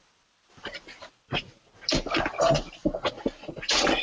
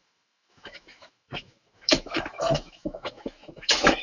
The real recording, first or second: first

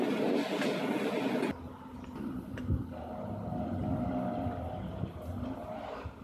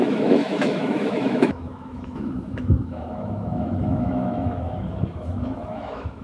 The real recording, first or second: first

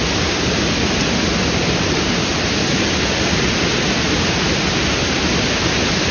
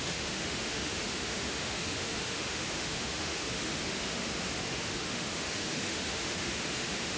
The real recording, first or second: first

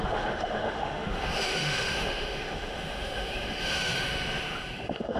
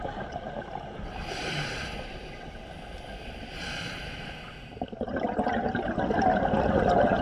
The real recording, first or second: second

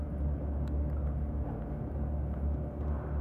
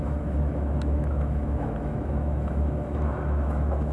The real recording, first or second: first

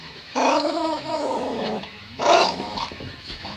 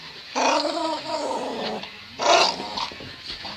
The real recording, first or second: second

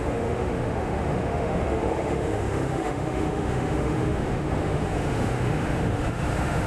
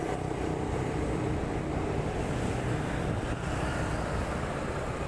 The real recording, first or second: second